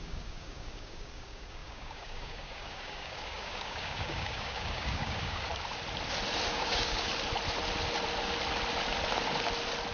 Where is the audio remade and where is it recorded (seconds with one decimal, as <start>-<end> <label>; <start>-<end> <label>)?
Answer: 0.0-5.5 remade; 5.5-6.5 recorded; 6.5-7.1 remade; 7.1-9.9 recorded